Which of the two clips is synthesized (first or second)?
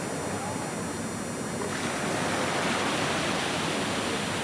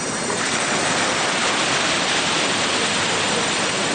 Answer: second